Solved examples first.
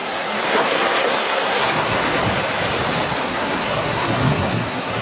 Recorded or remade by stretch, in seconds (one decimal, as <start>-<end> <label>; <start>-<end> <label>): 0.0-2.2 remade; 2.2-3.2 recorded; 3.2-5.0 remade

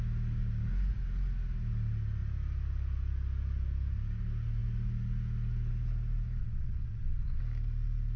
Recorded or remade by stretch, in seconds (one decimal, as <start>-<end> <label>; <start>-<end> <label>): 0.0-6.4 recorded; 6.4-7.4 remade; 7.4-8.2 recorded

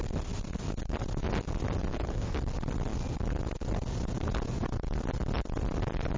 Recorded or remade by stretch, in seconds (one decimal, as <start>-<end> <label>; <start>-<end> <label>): 0.0-1.9 recorded; 1.9-2.4 remade; 2.4-6.2 recorded

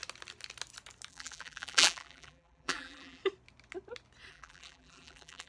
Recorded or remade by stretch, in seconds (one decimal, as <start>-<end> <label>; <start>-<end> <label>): 0.0-1.1 recorded; 1.1-3.2 remade; 3.2-4.3 recorded; 4.3-5.5 remade

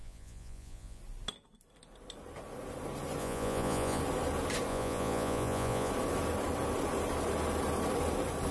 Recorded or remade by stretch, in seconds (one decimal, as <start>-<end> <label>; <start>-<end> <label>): 0.0-1.0 remade; 1.0-3.2 recorded; 3.2-4.0 remade; 4.0-4.7 recorded; 4.7-5.9 remade; 5.9-8.5 recorded